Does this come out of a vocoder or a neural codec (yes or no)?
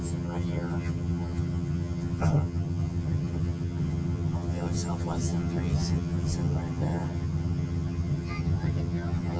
yes